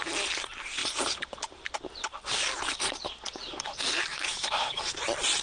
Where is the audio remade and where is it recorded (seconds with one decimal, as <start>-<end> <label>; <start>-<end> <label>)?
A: 0.0-4.1 recorded; 4.1-5.0 remade; 5.0-5.4 recorded